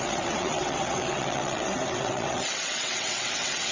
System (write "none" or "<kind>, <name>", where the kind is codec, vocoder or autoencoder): vocoder, WaveNeXt